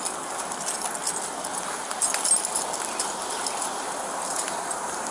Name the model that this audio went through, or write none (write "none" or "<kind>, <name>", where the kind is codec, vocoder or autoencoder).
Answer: none